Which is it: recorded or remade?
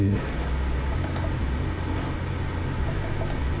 recorded